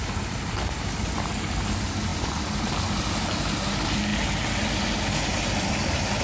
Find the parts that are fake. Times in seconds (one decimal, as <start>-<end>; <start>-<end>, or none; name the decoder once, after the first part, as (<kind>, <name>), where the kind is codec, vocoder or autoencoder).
none